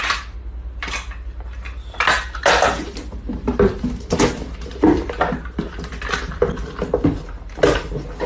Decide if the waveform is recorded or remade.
recorded